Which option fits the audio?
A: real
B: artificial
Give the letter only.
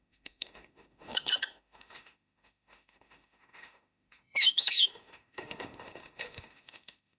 B